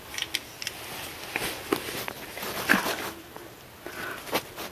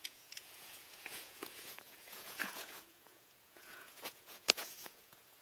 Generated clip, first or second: second